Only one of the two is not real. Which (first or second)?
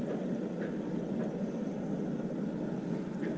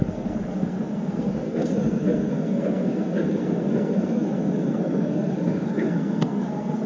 second